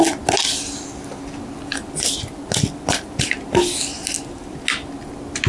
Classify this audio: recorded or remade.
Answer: recorded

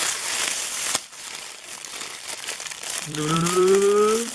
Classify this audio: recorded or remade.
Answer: remade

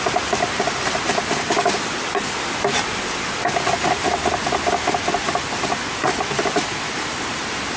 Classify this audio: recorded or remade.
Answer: remade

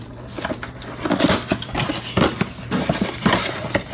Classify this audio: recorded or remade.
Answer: recorded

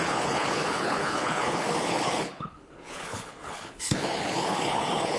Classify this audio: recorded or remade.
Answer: remade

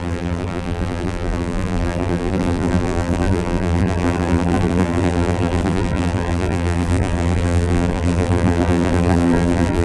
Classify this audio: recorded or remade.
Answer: remade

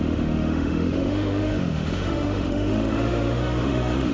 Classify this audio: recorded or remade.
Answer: remade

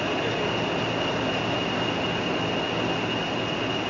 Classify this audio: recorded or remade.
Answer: recorded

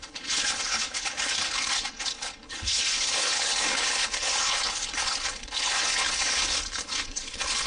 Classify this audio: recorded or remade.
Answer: remade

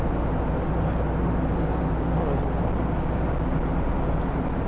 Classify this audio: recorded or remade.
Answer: recorded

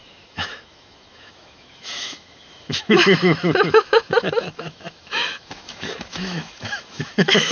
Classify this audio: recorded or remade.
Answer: remade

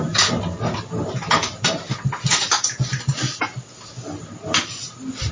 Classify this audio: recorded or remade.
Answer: recorded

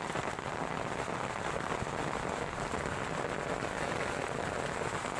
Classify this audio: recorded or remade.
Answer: recorded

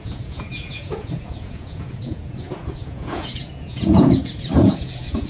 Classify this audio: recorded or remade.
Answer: remade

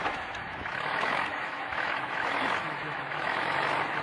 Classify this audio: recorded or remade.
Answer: remade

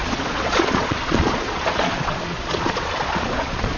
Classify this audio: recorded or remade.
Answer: remade